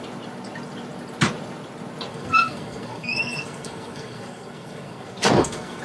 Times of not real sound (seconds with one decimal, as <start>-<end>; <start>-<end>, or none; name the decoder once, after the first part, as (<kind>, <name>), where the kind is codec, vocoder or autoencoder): 2.1-5.8 (codec, SNAC)